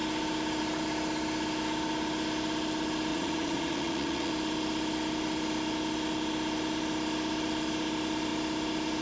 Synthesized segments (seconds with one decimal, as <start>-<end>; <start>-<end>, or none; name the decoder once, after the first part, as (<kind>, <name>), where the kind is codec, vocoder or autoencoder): 3.1-4.3 (vocoder, Vocos)